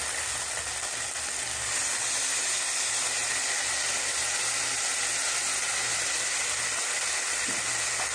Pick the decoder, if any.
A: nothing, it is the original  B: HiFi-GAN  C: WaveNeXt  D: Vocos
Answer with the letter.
A